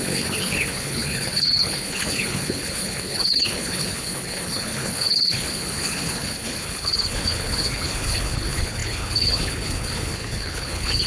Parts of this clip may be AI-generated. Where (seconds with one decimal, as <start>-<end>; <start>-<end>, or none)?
0.0-11.1